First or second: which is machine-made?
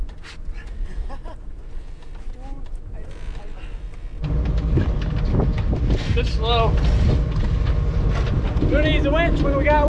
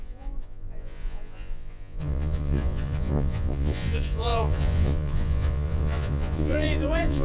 second